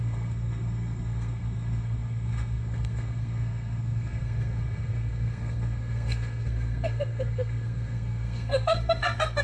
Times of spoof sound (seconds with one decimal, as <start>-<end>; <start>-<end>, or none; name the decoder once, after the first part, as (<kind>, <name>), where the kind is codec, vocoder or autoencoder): 0.0-9.4 (codec, SNAC)